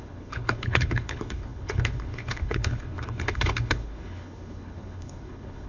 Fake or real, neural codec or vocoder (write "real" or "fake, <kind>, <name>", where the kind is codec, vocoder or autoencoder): fake, codec, HILCodec